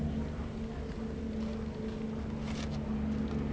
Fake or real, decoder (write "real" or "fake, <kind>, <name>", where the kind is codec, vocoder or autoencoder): real